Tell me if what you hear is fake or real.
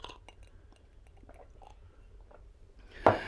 real